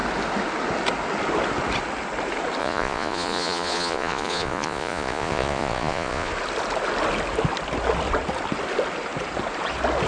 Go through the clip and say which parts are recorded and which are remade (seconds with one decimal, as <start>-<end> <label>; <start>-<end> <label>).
0.0-2.6 recorded; 2.6-6.3 remade; 6.3-10.1 recorded